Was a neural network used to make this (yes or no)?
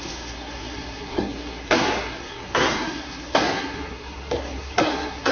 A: yes